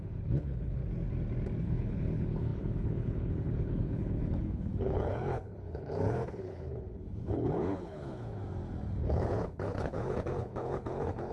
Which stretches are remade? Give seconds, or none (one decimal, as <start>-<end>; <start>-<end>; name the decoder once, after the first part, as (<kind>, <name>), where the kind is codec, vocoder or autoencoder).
0.0-0.8 (codec, HILCodec); 1.6-8.4; 9.0-11.3